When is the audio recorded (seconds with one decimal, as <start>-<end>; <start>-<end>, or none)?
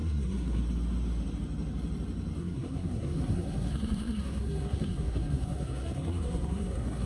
0.6-2.4